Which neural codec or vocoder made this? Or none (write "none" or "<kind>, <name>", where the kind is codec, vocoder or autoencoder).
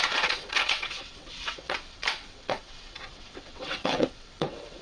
vocoder, WaveNeXt